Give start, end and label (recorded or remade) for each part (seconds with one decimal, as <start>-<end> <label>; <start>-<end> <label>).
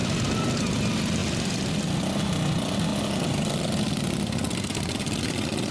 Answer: 0.0-5.7 recorded